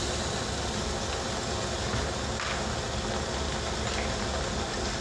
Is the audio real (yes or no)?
yes